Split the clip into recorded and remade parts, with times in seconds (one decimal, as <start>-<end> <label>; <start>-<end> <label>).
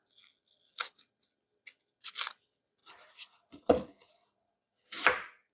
0.0-5.5 recorded